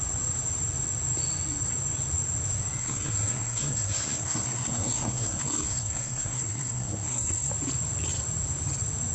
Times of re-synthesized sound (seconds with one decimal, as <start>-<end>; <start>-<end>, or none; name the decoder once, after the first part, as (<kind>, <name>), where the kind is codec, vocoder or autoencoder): 2.8-7.5 (codec, SNAC)